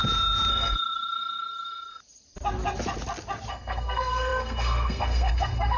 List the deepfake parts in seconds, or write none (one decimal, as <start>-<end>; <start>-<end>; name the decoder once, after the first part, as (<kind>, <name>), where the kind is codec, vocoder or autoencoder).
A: 0.5-2.0 (codec, SNAC); 3.5-5.8